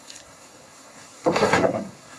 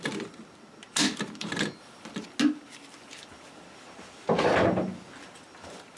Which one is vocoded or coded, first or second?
first